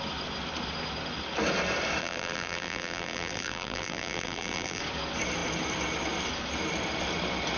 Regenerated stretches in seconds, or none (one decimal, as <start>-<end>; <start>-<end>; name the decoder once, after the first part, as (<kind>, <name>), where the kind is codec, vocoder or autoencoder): 2.0-4.8 (vocoder, BigVGAN v2)